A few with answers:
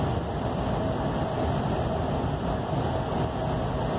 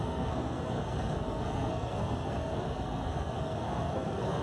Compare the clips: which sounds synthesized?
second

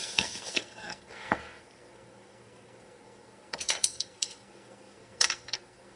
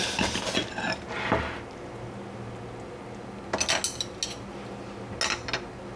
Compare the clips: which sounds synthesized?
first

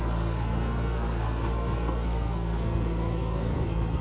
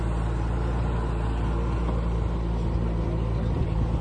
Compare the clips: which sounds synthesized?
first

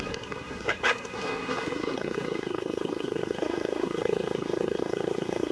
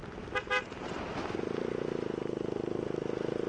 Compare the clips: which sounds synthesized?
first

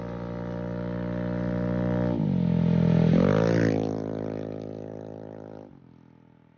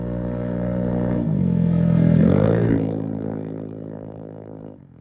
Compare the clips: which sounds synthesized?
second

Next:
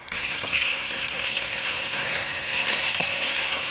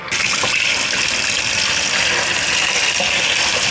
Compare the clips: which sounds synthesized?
first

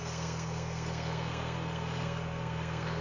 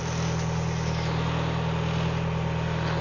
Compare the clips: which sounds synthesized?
first